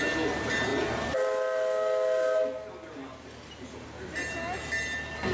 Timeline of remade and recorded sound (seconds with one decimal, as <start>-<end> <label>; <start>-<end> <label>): 0.0-5.3 recorded